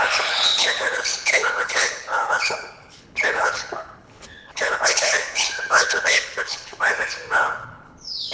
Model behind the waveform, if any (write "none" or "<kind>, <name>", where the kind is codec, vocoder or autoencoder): codec, HILCodec